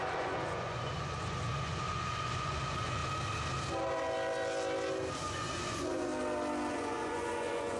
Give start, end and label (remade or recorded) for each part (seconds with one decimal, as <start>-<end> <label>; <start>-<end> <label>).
0.0-3.0 remade; 3.0-5.1 recorded; 5.1-6.1 remade; 6.1-6.7 recorded; 6.7-7.8 remade